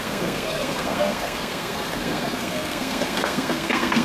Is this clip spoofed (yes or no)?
yes